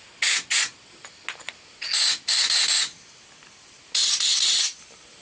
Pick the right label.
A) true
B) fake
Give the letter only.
A